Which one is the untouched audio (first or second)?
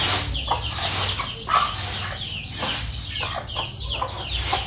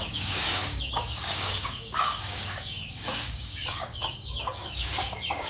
first